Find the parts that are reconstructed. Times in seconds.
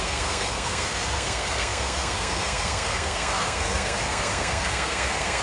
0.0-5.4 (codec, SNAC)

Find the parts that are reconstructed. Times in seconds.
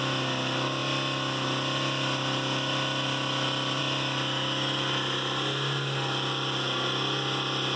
none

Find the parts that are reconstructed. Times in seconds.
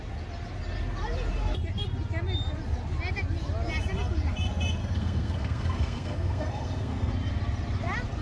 4.8-7.1 (codec, SNAC)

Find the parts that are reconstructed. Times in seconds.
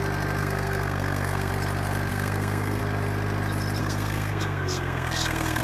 0.4-1.5 (codec, SNAC); 2.1-2.8; 3.8-5.6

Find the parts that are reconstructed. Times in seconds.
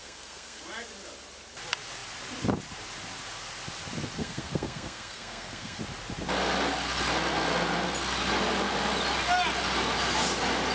0.0-0.6 (codec, SNAC); 4.2-5.8